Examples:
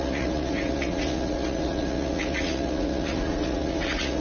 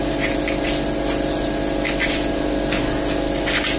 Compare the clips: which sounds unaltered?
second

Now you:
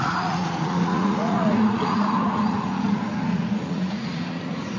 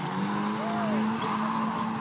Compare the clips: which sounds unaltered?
second